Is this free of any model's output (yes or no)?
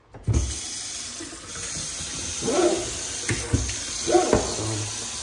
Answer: yes